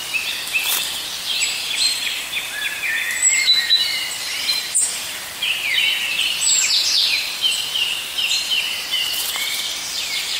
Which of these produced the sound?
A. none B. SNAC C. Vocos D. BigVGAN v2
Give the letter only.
D